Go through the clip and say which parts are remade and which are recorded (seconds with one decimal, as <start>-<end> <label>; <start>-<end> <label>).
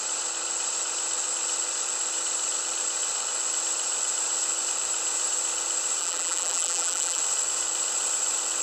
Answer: 0.0-6.0 recorded; 6.0-7.2 remade; 7.2-8.6 recorded